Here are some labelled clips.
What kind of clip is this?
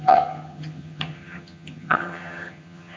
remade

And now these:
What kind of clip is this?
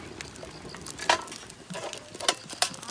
recorded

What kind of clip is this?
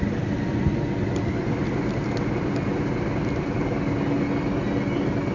recorded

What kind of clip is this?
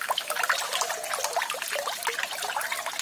recorded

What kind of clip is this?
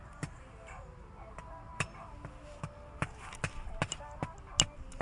recorded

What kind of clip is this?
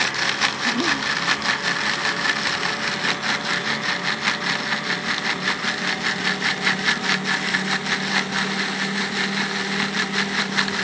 recorded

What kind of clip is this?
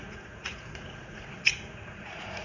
remade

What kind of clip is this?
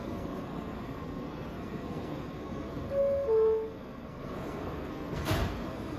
remade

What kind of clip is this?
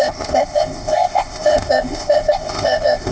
remade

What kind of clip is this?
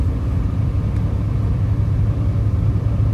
recorded